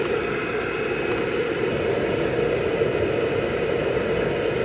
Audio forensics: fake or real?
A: real